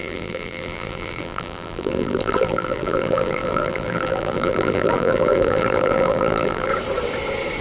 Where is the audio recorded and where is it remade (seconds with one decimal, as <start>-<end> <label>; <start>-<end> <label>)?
0.0-6.7 remade; 6.7-7.6 recorded